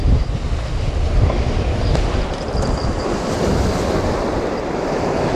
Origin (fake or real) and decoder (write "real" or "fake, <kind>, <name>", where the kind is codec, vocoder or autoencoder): fake, vocoder, BigVGAN v2